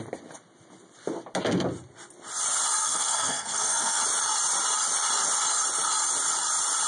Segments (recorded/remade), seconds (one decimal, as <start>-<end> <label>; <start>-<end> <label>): 0.0-2.8 recorded; 2.8-4.0 remade; 4.0-6.9 recorded